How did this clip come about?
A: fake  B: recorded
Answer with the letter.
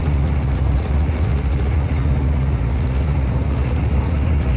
A